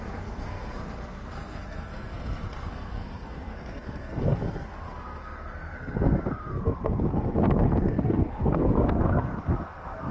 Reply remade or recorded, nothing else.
remade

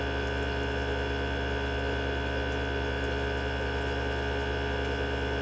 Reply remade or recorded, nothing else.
recorded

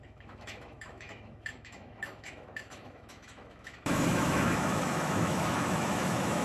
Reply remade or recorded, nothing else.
remade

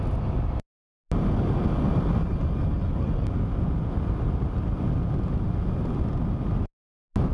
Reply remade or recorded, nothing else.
recorded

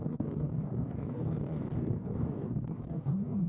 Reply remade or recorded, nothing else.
remade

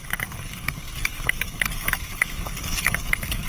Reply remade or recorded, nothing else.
remade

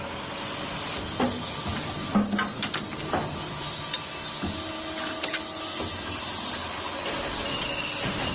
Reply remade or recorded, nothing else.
recorded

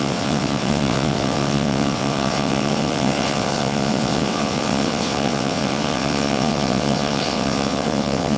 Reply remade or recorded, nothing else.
remade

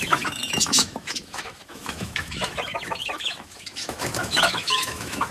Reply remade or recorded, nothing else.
remade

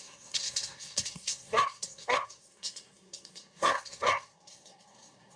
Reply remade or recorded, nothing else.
remade